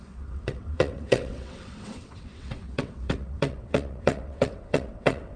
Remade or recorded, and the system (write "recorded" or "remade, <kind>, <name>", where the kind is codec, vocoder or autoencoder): remade, vocoder, WaveNeXt